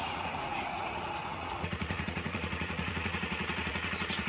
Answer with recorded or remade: remade